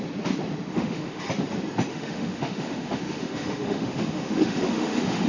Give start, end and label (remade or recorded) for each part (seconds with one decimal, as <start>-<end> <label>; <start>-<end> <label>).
0.0-0.7 recorded; 0.7-1.2 remade; 1.2-1.9 recorded; 1.9-5.3 remade